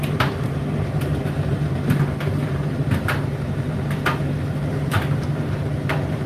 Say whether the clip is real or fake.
fake